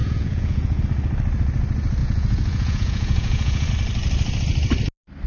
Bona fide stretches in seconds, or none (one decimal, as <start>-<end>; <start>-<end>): 0.8-2.0; 3.7-5.3